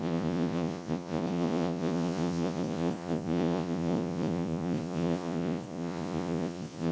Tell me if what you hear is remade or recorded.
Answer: remade